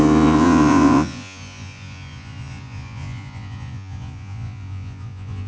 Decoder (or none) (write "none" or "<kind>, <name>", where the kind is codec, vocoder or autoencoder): vocoder, Vocos